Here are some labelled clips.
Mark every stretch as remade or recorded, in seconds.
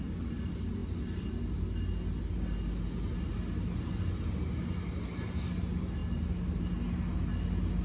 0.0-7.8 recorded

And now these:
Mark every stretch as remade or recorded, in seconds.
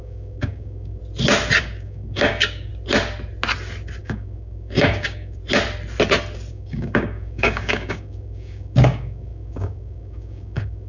0.0-1.0 remade; 1.0-1.6 recorded; 1.6-2.7 remade; 2.7-4.0 recorded; 4.0-5.4 remade; 5.4-6.5 recorded; 6.5-10.9 remade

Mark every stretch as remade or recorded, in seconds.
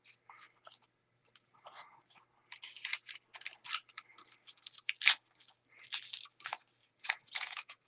0.0-6.8 recorded; 6.8-7.9 remade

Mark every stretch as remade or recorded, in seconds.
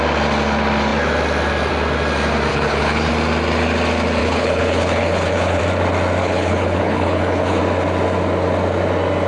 0.0-2.5 recorded; 2.5-3.1 remade; 3.1-4.2 recorded; 4.2-5.6 remade; 5.6-6.2 recorded; 6.2-7.6 remade; 7.6-9.3 recorded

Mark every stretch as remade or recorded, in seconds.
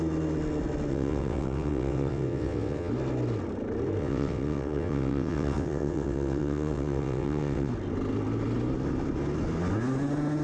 0.0-0.9 recorded; 0.9-2.9 remade; 2.9-4.0 recorded; 4.0-7.7 remade; 7.7-10.4 recorded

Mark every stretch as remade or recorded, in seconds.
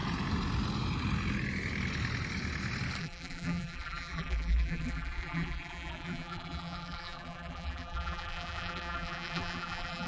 0.0-3.0 recorded; 3.0-10.1 remade